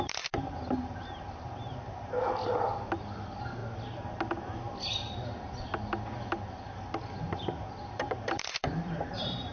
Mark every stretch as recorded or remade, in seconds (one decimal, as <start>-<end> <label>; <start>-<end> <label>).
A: 0.0-3.6 remade; 3.6-7.2 recorded; 7.2-9.5 remade